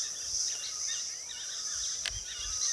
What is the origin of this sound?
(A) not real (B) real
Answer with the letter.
B